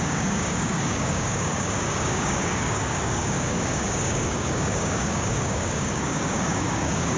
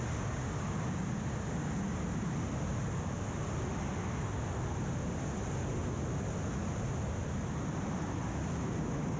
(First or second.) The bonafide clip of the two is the second